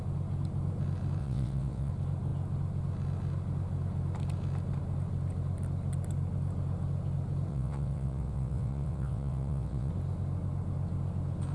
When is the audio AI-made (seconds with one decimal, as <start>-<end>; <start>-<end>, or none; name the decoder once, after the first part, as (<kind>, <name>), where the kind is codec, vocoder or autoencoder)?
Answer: 1.2-1.9 (vocoder, WaveNeXt); 7.5-9.9